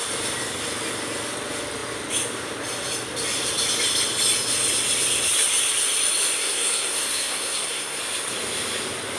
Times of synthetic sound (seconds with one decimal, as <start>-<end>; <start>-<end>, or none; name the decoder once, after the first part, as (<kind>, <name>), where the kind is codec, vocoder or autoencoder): 6.4-8.0 (codec, SNAC)